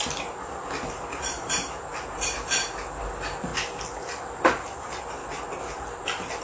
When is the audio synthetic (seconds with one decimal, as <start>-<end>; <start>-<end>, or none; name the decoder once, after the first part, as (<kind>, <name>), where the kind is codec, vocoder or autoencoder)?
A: none